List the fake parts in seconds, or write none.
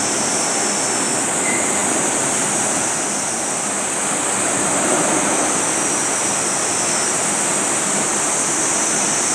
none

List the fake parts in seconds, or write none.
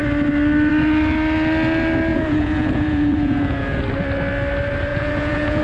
2.1-3.8 (vocoder, Vocos); 4.9-5.6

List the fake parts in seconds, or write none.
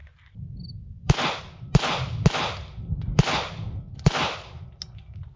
none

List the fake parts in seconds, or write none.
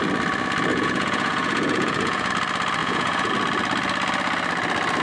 0.7-2.3 (vocoder, Vocos); 2.8-3.3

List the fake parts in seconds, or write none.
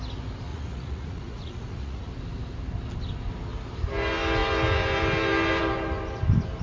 0.5-2.1 (vocoder, Vocos)